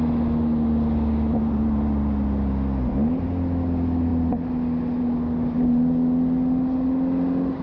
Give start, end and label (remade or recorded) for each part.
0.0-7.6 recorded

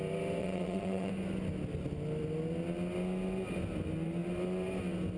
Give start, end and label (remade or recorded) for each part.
0.0-0.4 recorded; 0.4-1.1 remade; 1.1-5.2 recorded

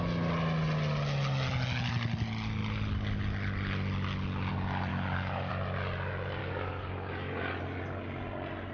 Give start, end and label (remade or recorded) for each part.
0.0-4.9 recorded; 4.9-5.5 remade; 5.5-6.4 recorded; 6.4-7.6 remade; 7.6-8.7 recorded

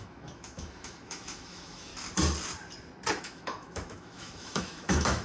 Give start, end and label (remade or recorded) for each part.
0.0-1.9 remade; 1.9-3.2 recorded; 3.2-5.2 remade

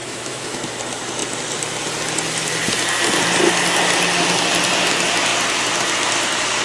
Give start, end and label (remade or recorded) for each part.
0.0-0.6 remade; 0.6-6.6 recorded

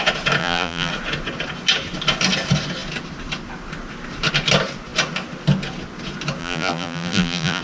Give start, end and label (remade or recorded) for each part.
0.0-0.4 recorded; 0.4-0.9 remade; 0.9-6.4 recorded; 6.4-7.6 remade

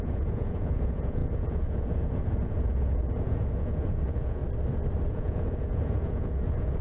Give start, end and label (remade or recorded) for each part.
0.0-4.4 remade; 4.4-5.1 recorded; 5.1-6.8 remade

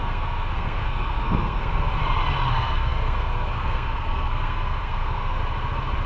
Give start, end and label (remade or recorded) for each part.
0.0-2.0 remade; 2.0-2.5 recorded; 2.5-5.4 remade; 5.4-6.1 recorded